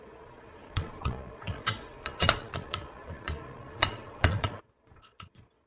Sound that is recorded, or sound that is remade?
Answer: remade